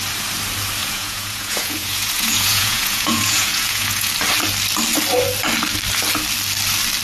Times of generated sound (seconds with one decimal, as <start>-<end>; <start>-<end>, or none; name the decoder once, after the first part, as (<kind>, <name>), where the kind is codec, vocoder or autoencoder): 0.8-4.1 (vocoder, Vocos)